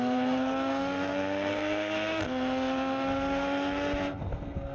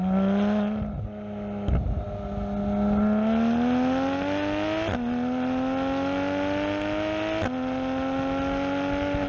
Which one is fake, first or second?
first